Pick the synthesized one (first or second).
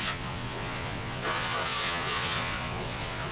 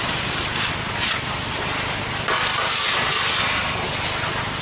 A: first